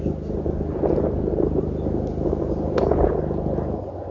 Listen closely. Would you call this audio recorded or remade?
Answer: recorded